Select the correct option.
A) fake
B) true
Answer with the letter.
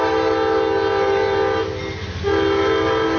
B